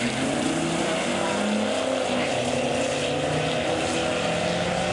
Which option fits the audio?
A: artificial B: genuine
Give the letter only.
B